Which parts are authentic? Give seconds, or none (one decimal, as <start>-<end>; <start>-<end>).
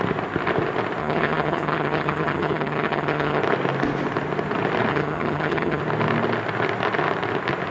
0.0-1.0; 3.4-4.9; 5.8-7.7